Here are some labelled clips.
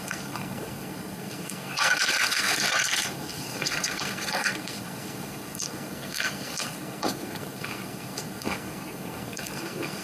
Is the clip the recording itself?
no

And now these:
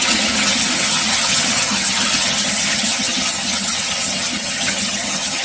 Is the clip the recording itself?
no